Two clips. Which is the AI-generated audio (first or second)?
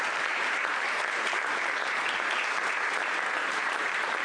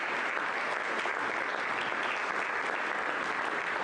first